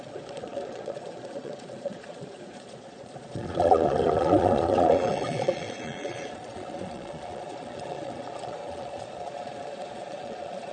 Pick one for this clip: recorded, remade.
remade